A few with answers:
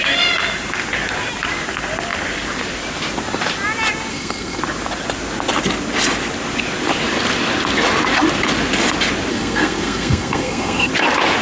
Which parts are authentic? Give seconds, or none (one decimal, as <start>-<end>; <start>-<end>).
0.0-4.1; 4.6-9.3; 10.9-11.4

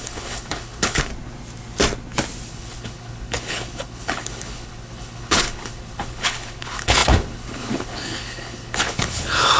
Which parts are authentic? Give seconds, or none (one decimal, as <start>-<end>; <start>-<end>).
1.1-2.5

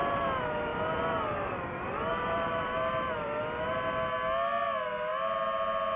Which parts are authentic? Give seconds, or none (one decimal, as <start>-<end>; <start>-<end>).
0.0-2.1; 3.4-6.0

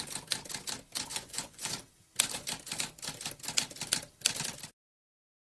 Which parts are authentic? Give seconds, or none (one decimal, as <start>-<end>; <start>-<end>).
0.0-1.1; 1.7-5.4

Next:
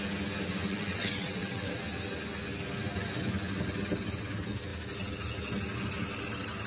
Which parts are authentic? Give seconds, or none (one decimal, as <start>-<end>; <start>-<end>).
0.0-0.7; 1.7-6.7